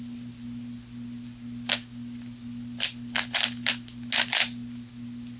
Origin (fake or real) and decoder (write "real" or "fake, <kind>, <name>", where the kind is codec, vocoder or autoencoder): real